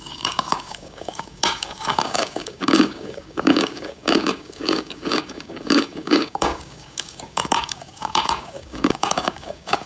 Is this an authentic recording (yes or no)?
no